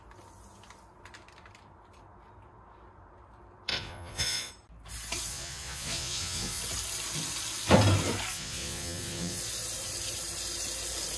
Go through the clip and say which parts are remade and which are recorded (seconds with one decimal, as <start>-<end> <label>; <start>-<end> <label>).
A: 0.0-3.7 recorded; 3.7-4.5 remade; 4.5-5.3 recorded; 5.3-6.6 remade; 6.6-8.3 recorded; 8.3-9.4 remade; 9.4-11.2 recorded